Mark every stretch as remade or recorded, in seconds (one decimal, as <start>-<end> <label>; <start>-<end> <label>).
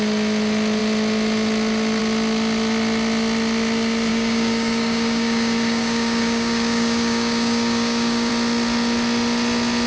0.0-4.1 recorded; 4.1-8.3 remade; 8.3-9.9 recorded